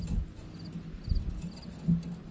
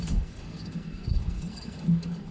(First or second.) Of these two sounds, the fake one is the second